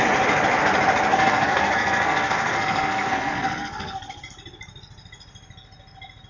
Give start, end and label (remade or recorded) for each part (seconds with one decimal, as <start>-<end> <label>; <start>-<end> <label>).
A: 0.0-1.1 recorded; 1.1-4.2 remade; 4.2-6.3 recorded